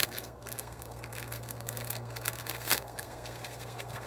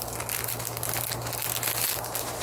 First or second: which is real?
second